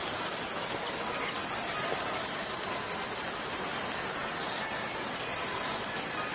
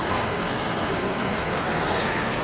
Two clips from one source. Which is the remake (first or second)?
second